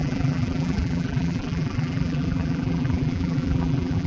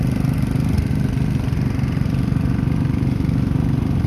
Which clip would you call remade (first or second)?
first